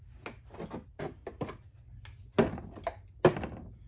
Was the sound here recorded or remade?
recorded